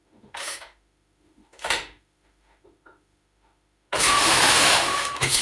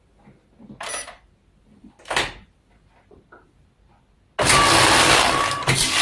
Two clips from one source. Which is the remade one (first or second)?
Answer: first